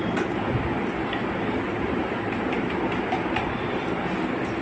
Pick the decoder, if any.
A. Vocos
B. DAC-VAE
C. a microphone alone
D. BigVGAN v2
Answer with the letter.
C